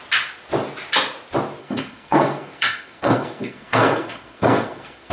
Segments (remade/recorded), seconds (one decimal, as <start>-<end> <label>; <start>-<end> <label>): 0.0-1.6 recorded; 1.6-5.1 remade